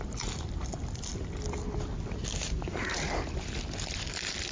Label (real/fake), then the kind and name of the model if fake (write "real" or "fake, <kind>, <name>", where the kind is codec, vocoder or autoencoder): real